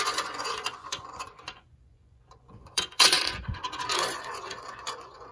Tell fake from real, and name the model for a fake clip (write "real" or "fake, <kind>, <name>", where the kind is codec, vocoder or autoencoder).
fake, vocoder, Vocos